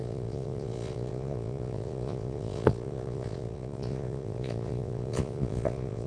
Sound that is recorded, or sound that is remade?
remade